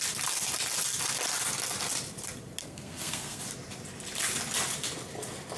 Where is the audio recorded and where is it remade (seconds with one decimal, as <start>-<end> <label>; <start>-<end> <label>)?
0.0-2.6 recorded; 2.6-3.4 remade; 3.4-5.6 recorded